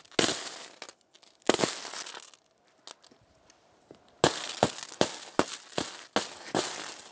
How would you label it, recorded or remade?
recorded